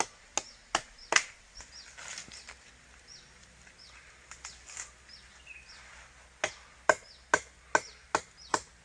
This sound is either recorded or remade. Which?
recorded